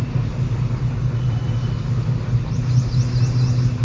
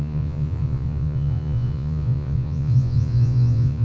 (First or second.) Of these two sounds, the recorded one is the first